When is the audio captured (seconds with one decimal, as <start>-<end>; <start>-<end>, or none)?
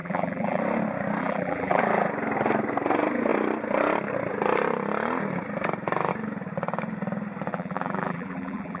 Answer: 0.6-1.2; 1.8-7.5